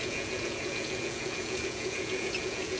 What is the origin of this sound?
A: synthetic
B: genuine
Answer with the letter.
A